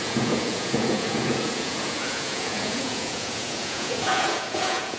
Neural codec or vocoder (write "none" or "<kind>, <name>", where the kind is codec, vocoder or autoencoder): vocoder, Vocos